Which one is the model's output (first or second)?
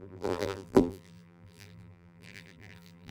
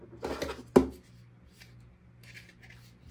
first